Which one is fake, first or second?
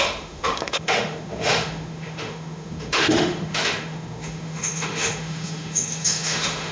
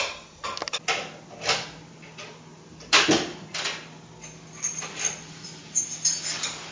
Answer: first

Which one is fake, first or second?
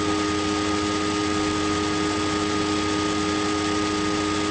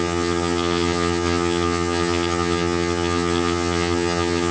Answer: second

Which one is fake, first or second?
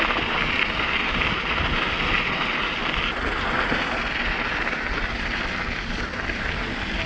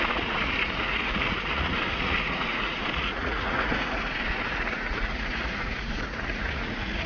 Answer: second